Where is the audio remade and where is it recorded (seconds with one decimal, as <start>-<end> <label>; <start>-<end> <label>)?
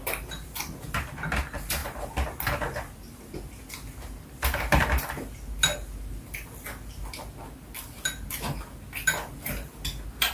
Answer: 0.0-10.3 recorded